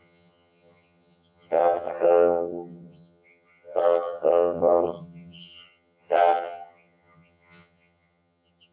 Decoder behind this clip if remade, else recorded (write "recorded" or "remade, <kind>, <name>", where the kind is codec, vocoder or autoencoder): remade, vocoder, HiFi-GAN